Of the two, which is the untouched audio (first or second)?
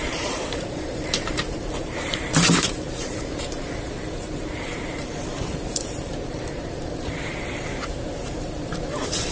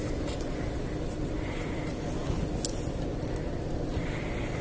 second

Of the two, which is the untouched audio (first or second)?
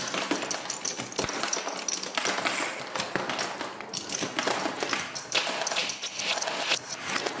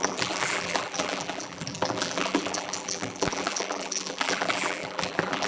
first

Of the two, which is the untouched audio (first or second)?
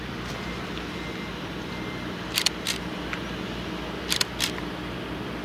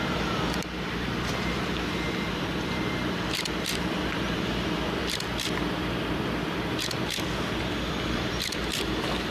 first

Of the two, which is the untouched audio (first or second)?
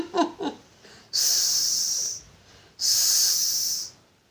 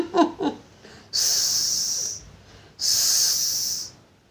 second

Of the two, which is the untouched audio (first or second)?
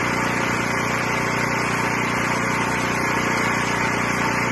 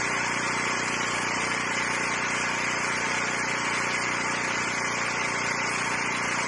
first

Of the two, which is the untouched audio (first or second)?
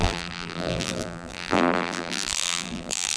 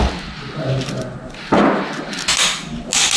second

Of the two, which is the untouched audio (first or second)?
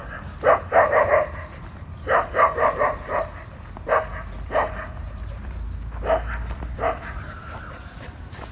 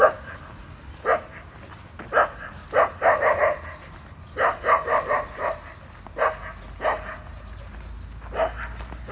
second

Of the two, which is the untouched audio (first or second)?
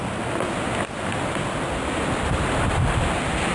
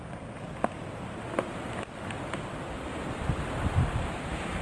first